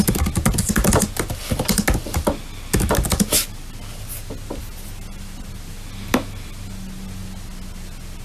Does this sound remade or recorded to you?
recorded